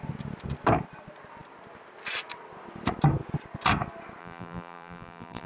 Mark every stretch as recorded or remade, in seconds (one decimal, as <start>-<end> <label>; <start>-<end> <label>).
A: 0.0-4.2 recorded; 4.2-5.5 remade